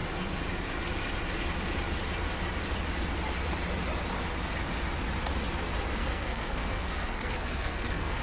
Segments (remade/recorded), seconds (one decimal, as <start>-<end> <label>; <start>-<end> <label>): 0.0-6.0 recorded; 6.0-8.2 remade